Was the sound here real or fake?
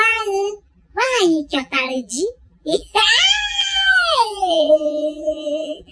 fake